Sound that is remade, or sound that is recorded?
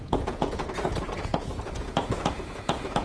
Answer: remade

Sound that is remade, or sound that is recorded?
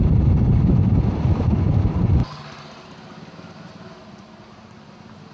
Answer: recorded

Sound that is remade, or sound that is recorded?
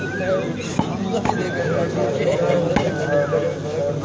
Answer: recorded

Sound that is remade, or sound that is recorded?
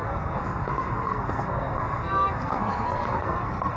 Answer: remade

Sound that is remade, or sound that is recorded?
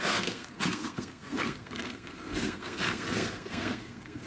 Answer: remade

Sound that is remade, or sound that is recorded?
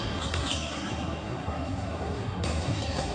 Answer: remade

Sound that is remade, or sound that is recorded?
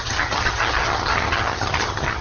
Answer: remade